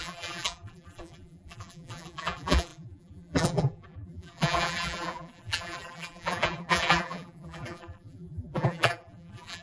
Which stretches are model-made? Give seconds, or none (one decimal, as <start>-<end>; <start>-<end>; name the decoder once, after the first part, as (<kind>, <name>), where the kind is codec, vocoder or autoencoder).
0.0-9.6 (vocoder, BigVGAN v2)